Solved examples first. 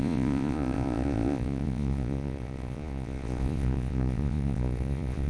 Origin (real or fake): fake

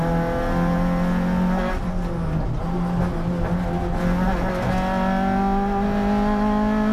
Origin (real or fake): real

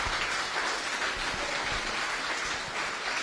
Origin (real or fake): real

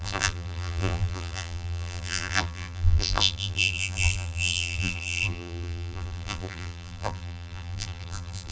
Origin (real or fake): fake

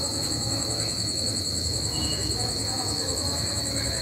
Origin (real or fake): fake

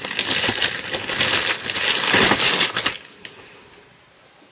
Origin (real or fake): real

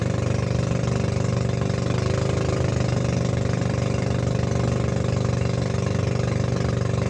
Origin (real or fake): real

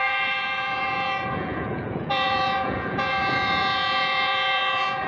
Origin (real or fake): fake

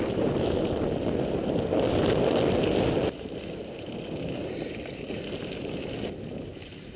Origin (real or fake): real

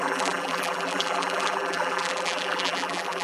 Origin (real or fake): fake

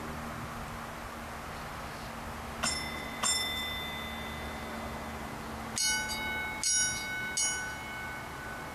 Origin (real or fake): real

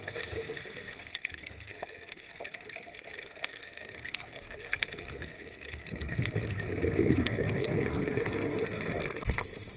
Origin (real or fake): fake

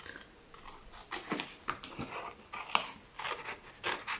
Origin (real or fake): real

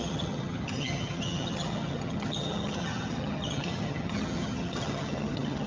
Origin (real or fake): fake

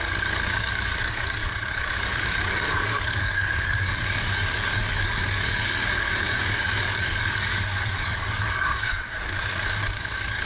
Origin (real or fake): fake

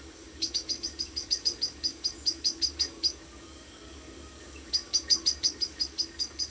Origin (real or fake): fake